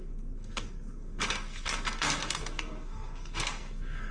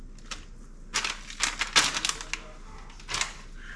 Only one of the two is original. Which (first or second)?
second